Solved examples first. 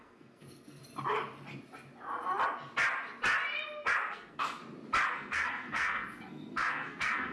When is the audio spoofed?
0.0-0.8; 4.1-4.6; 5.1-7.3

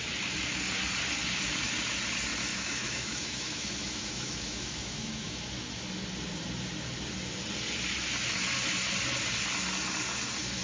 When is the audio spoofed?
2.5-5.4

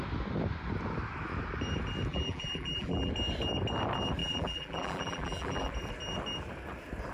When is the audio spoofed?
2.1-3.1; 4.2-5.7

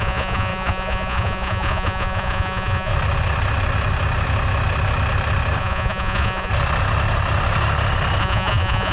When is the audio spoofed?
0.0-2.9; 5.6-6.5; 8.2-8.9

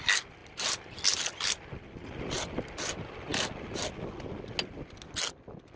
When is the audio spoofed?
none